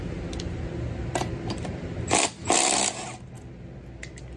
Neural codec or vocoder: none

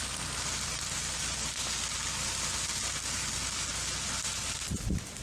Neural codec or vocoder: none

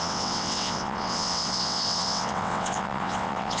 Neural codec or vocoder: vocoder, WaveNeXt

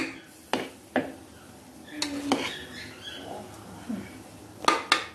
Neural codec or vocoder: none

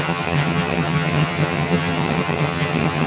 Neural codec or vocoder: vocoder, HiFi-GAN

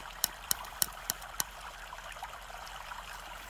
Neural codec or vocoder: vocoder, BigVGAN v2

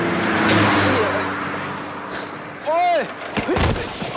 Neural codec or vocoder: none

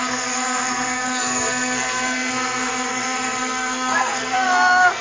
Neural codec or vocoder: codec, SNAC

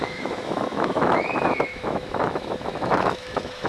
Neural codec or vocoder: autoencoder, DAC-VAE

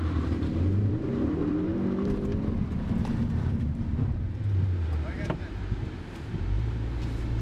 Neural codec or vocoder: vocoder, BigVGAN v2